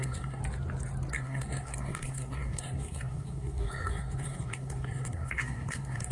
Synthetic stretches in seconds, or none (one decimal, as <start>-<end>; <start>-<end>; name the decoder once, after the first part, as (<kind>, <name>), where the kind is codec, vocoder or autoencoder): 0.0-0.4 (codec, SNAC); 1.1-6.1